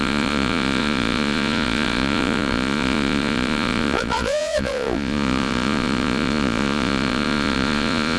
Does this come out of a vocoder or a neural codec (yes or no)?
yes